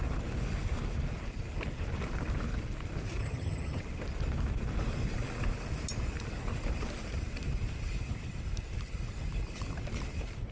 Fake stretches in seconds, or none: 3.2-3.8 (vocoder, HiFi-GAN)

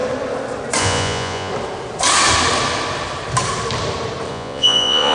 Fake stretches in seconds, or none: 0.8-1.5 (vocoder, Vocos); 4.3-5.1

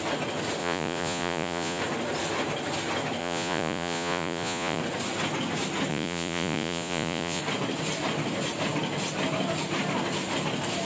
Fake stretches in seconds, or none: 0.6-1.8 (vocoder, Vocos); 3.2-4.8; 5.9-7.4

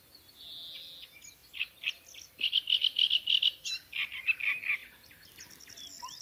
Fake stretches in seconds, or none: 1.4-3.7 (vocoder, BigVGAN v2)